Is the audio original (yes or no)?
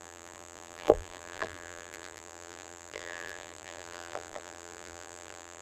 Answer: no